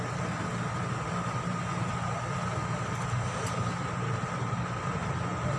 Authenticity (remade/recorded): recorded